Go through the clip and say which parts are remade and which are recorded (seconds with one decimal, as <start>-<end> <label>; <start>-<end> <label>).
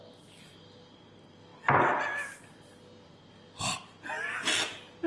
0.0-5.1 recorded